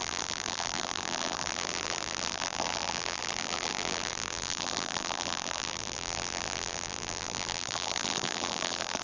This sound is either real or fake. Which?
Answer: fake